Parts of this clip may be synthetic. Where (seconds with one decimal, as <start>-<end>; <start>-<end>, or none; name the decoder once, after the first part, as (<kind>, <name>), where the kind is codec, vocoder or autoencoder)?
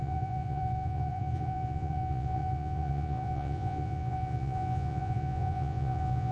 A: 0.0-6.3 (vocoder, Vocos)